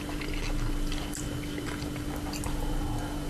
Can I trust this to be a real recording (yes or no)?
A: yes